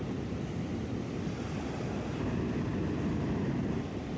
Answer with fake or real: real